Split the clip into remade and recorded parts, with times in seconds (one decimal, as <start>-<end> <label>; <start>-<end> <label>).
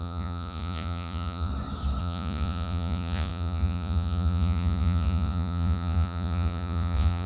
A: 0.0-1.5 remade; 1.5-2.0 recorded; 2.0-7.3 remade